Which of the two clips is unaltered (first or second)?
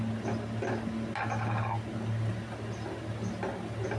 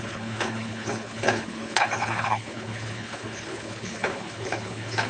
first